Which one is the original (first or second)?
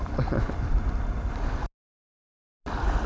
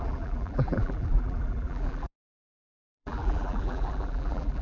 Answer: first